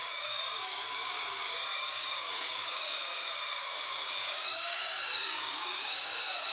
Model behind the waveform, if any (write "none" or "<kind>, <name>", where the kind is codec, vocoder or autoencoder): codec, DAC